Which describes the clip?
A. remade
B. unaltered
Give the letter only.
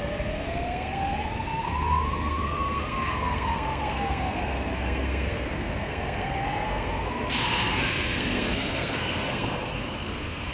A